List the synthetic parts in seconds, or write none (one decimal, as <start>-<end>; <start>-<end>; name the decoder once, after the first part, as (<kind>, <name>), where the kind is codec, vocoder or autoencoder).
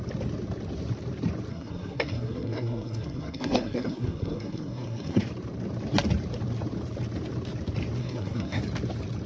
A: 1.5-5.2 (codec, SNAC); 8.0-8.6